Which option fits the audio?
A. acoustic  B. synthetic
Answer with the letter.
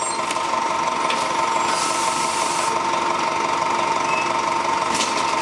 A